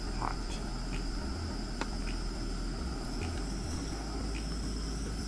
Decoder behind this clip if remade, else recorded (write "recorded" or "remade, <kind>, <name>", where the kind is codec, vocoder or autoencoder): recorded